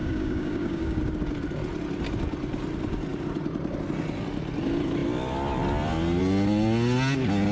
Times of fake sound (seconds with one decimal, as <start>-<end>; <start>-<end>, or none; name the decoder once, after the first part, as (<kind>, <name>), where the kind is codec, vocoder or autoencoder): 0.0-1.0 (codec, DAC)